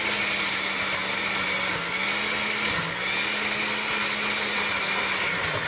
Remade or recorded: recorded